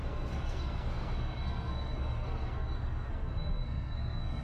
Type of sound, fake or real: fake